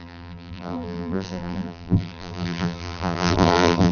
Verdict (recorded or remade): remade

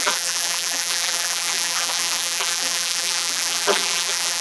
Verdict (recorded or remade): remade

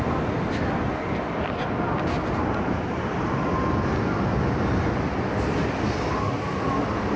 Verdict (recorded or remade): recorded